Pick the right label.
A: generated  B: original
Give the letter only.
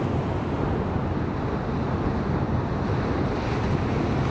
B